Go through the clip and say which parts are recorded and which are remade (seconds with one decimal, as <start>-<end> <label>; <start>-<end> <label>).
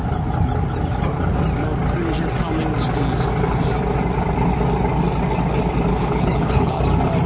0.0-5.9 recorded; 5.9-6.8 remade; 6.8-7.3 recorded